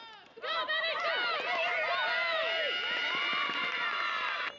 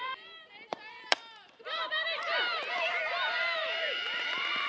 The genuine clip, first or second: first